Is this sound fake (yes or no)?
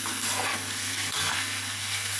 yes